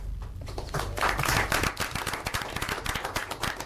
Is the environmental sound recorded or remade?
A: recorded